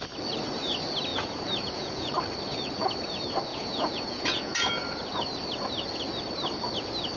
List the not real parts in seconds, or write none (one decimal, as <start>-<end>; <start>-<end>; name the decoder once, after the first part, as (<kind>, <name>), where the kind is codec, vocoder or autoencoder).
1.1-2.1 (vocoder, Vocos); 3.5-4.7